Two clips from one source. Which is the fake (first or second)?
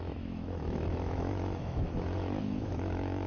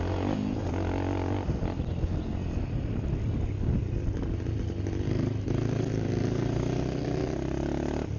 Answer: first